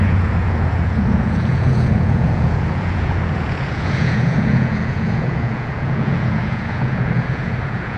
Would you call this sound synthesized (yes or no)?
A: yes